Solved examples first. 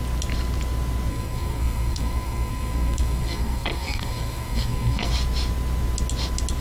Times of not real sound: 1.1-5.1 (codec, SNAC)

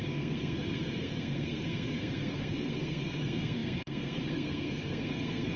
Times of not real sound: 0.0-5.6 (codec, SNAC)